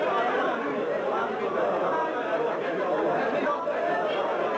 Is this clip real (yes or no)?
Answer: yes